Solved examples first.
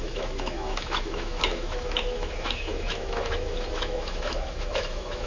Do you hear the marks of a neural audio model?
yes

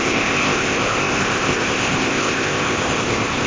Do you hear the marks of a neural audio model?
yes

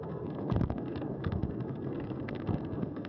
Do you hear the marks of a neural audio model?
yes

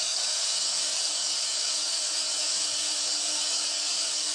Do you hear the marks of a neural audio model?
yes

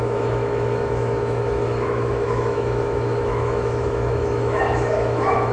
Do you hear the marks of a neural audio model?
yes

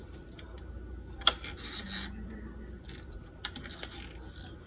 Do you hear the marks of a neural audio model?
no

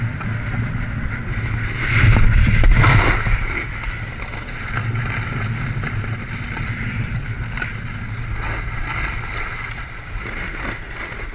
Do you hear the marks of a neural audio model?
no